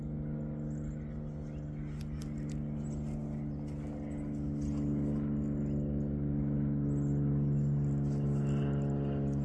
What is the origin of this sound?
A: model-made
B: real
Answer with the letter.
B